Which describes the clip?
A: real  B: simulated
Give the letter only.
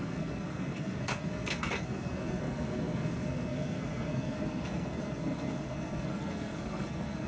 B